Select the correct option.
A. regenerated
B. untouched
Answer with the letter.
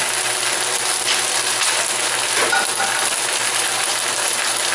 B